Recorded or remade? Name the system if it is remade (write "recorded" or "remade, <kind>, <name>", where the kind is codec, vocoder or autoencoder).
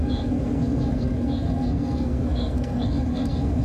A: remade, codec, SNAC